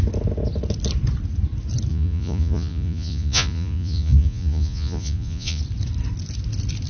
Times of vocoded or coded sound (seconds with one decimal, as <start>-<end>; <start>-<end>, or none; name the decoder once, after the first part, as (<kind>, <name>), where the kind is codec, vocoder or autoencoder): 1.9-5.6 (vocoder, Vocos)